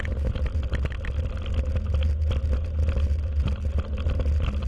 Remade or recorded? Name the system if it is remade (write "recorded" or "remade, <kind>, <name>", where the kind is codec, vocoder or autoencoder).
recorded